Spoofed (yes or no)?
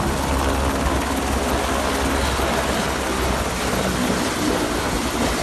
no